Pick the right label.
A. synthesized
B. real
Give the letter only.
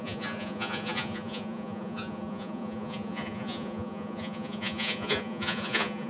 A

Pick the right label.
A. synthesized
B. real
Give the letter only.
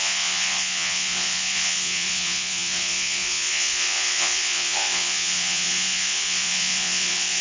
A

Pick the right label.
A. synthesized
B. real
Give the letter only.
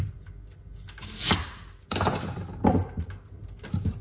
B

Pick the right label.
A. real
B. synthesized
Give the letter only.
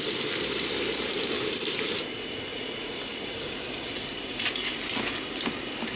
A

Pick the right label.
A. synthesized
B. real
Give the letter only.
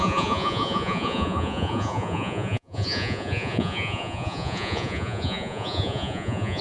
A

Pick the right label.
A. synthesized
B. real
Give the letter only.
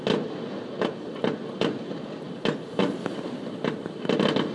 B